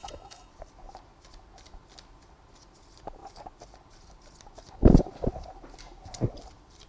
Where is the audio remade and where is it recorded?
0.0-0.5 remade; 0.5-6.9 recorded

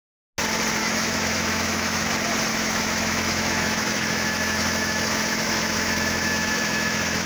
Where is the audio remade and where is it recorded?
0.0-0.8 recorded; 0.8-2.1 remade; 2.1-2.5 recorded; 2.5-7.3 remade

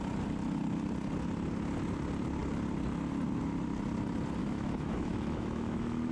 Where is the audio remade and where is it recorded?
0.0-4.4 recorded; 4.4-6.1 remade

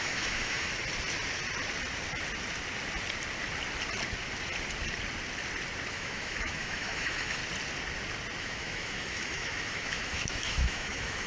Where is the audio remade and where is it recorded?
0.0-0.7 remade; 0.7-5.9 recorded; 5.9-7.4 remade; 7.4-8.4 recorded; 8.4-11.3 remade

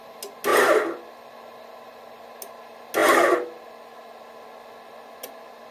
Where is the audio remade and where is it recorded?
0.0-5.7 recorded

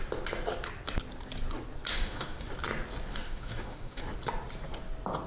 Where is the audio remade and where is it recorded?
0.0-1.9 recorded; 1.9-2.5 remade; 2.5-3.1 recorded; 3.1-4.0 remade; 4.0-5.3 recorded

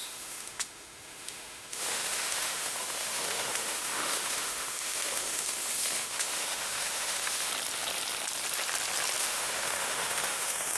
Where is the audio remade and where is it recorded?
0.0-7.5 remade; 7.5-9.2 recorded; 9.2-10.8 remade

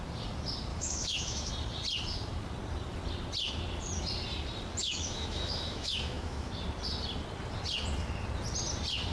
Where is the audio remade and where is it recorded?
0.0-0.7 recorded; 0.7-1.5 remade; 1.5-4.8 recorded; 4.8-6.5 remade; 6.5-9.1 recorded